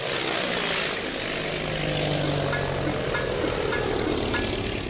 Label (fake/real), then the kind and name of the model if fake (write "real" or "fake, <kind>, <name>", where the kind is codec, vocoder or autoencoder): real